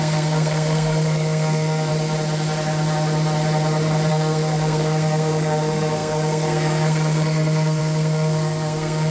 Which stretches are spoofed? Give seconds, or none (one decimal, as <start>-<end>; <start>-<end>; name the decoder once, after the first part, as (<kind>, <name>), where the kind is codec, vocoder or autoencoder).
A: 0.0-1.9 (codec, SNAC); 4.1-9.1